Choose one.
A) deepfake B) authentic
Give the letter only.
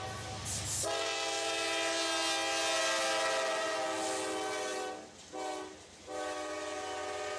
B